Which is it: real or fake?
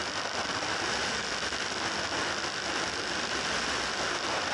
real